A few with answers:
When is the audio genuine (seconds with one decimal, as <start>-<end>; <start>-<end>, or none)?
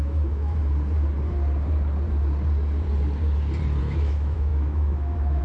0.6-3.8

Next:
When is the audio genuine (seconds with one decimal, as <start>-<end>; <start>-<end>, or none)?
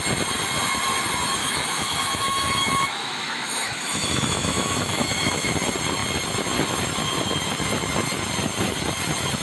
0.0-1.4; 5.5-9.4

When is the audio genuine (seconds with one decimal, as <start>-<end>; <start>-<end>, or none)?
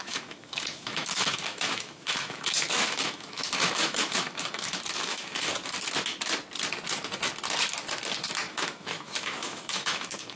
5.5-8.5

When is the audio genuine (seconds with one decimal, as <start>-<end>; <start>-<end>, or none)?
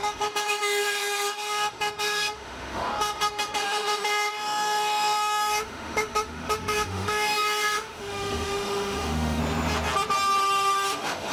9.4-10.4